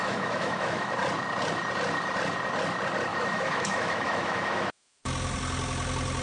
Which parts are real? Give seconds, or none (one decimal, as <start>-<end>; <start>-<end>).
0.9-3.1; 5.0-6.2